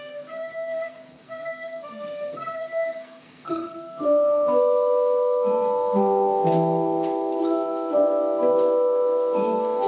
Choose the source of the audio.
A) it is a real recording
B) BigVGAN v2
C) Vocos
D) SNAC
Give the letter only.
D